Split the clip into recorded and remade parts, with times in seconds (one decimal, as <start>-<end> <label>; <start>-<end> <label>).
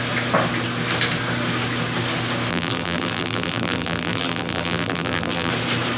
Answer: 0.0-2.5 recorded; 2.5-5.5 remade; 5.5-6.0 recorded